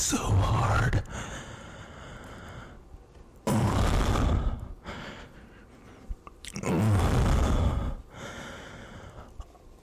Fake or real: fake